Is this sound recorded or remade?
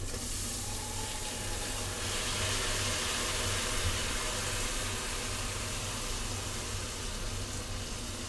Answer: recorded